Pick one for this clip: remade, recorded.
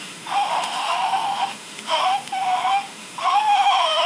remade